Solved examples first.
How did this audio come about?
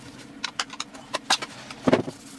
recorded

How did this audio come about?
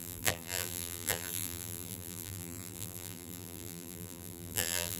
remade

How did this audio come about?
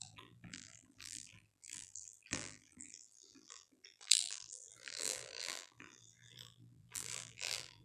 remade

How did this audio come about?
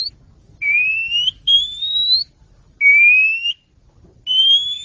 recorded